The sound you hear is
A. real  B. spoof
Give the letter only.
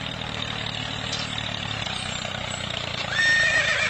B